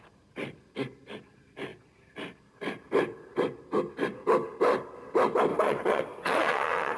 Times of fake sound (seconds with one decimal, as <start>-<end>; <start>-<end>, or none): 5.5-7.0